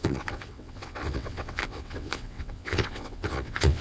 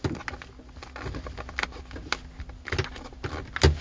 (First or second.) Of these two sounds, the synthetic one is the first